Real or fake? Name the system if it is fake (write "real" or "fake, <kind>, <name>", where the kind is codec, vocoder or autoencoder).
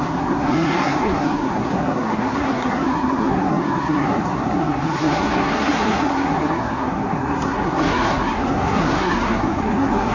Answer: fake, codec, SNAC